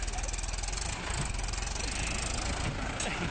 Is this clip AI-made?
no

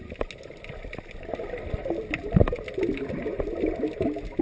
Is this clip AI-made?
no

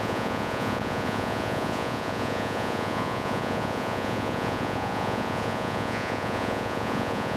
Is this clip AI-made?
yes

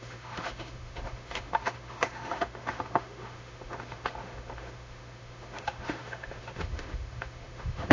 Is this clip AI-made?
yes